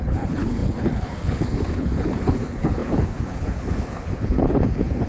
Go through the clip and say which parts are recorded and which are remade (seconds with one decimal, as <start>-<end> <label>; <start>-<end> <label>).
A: 0.0-5.1 remade